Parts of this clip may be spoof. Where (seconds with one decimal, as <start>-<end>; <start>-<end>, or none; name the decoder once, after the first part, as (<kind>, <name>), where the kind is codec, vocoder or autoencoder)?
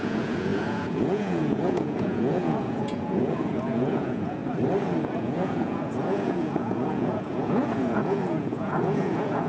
0.0-4.4 (vocoder, Vocos); 5.0-9.5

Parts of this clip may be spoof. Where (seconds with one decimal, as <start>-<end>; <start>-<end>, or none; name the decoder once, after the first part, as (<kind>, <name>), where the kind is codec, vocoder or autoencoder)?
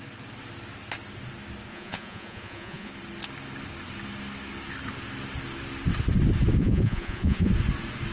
1.7-2.9 (vocoder, Vocos); 6.6-7.5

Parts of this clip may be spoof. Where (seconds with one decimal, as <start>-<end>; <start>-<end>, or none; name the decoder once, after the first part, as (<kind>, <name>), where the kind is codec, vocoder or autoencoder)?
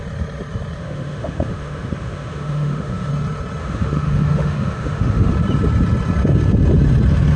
0.8-3.1 (autoencoder, DAC-VAE); 3.6-5.3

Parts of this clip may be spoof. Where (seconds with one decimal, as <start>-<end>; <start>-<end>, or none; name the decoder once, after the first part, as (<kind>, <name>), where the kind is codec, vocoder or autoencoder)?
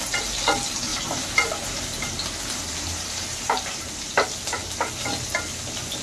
0.9-3.5 (vocoder, BigVGAN v2)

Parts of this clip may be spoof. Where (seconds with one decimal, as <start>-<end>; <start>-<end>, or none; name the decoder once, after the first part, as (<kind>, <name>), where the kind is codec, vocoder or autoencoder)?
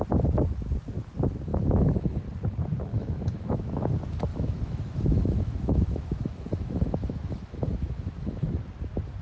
1.5-2.2 (autoencoder, DAC-VAE); 2.9-3.7; 4.3-8.6